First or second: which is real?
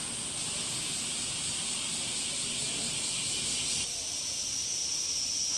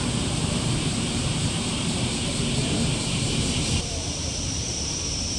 first